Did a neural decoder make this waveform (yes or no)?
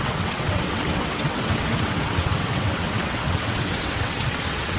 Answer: yes